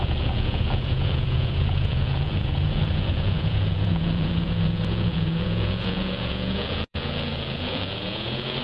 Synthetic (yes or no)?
yes